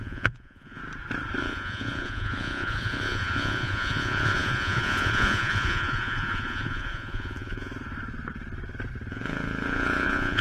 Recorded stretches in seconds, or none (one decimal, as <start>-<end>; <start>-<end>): 0.8-1.4; 7.7-9.1

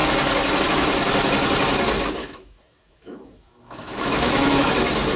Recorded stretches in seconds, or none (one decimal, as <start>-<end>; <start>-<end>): 0.0-2.2; 4.7-5.2